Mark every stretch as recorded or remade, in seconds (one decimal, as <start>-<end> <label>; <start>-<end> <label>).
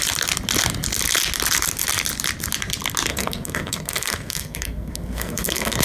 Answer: 0.0-3.1 recorded; 3.1-5.8 remade